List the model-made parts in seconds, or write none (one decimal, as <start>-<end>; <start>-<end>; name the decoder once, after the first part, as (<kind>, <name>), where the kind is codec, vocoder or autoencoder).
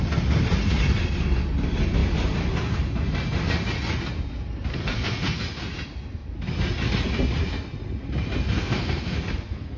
4.7-5.4 (codec, SNAC); 8.6-9.8